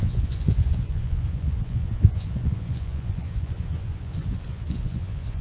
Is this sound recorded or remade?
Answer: remade